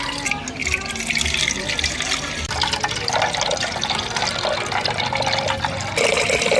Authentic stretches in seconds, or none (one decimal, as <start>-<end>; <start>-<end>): 0.0-6.6